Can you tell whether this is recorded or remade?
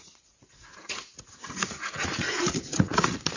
remade